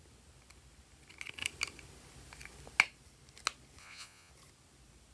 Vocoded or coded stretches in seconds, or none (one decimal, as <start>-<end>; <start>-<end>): 3.8-4.3